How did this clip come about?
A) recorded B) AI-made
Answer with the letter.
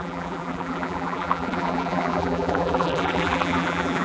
B